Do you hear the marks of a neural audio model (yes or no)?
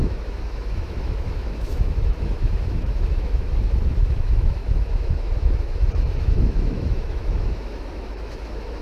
yes